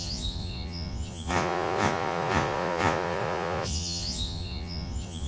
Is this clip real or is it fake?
fake